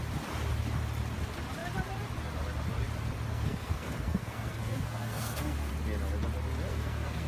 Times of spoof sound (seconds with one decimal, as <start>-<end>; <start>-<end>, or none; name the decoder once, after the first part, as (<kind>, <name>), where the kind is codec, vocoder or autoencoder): 3.3-5.7 (codec, SNAC); 6.7-7.3